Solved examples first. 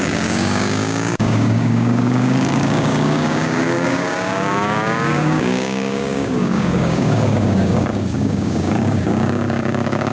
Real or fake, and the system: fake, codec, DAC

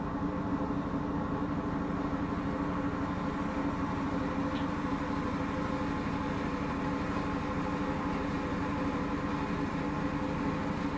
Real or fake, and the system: real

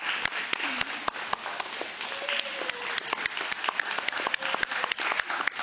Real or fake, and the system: real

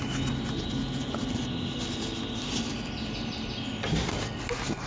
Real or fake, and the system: real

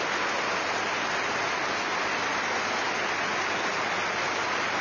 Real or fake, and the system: real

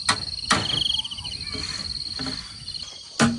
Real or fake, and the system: real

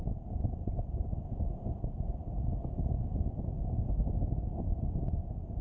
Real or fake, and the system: real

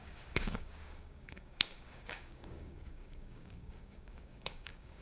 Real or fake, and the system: fake, codec, DAC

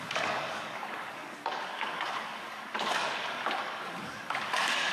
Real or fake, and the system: fake, codec, DAC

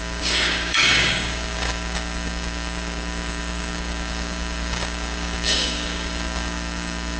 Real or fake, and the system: fake, codec, DAC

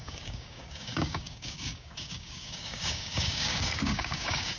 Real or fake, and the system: fake, codec, DAC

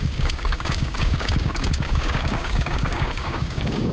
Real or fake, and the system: fake, codec, DAC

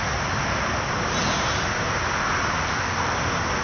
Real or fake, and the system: real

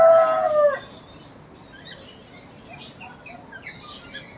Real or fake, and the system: real